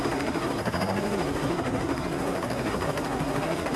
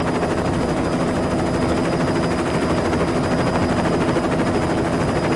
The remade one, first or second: first